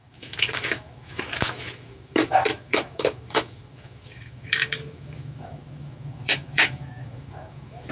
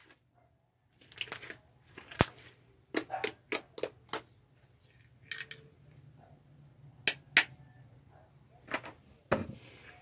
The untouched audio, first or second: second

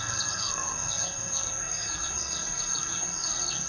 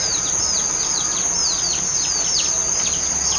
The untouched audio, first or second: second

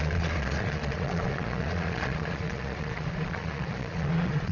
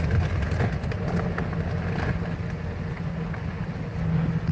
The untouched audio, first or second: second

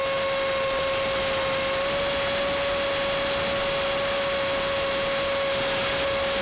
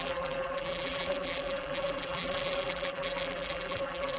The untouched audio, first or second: first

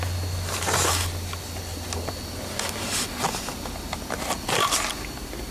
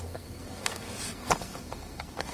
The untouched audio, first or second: first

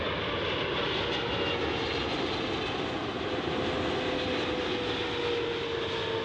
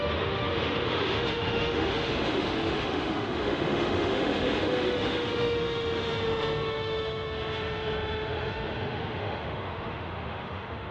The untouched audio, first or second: first